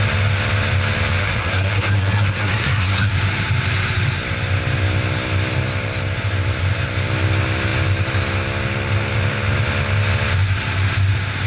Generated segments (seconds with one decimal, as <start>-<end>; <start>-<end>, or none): 1.2-3.1